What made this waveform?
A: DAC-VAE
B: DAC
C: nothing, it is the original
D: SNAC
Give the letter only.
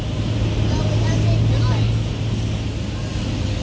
C